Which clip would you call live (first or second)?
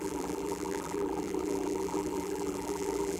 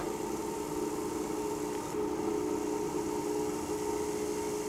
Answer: second